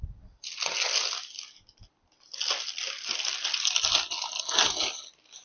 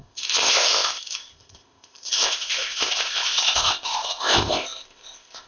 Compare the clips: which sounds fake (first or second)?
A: second